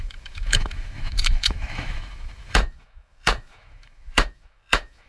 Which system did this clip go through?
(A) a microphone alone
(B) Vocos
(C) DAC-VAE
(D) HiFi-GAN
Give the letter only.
C